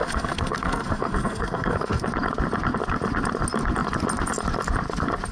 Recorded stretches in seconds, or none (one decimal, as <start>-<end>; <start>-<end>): 2.1-5.3